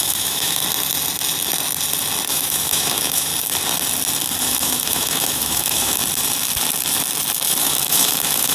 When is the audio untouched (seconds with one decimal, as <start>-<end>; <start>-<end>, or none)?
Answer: 0.6-2.3; 3.3-4.4; 6.0-7.6